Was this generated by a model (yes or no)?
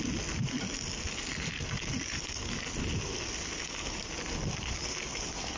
no